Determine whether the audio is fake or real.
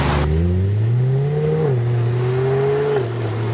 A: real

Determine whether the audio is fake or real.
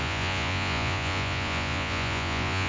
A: fake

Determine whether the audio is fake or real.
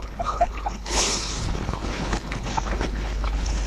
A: fake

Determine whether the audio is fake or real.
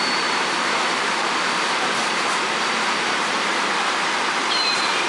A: fake